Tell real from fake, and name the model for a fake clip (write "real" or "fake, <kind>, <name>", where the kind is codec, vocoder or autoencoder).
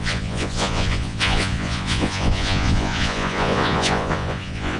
fake, vocoder, Vocos